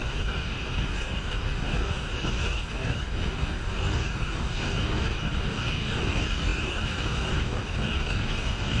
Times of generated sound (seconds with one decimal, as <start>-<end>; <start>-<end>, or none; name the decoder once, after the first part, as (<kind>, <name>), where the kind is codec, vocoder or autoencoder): 0.0-8.8 (codec, DAC)

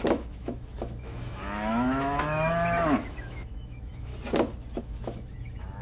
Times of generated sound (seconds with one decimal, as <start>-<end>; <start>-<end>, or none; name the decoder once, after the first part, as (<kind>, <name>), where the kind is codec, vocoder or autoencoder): 0.0-4.1 (autoencoder, DAC-VAE); 4.8-5.8

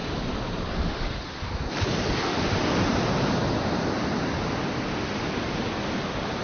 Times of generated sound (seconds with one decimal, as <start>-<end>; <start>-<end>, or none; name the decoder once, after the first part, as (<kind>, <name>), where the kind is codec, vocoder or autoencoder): none

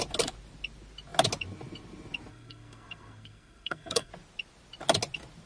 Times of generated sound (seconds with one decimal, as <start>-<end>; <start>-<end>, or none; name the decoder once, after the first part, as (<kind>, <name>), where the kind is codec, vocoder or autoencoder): 2.3-4.1 (codec, SNAC)

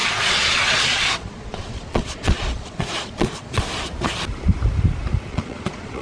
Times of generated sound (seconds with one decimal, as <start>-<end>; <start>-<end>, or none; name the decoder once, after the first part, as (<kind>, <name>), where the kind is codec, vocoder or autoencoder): 0.0-3.6 (vocoder, Vocos); 5.3-6.0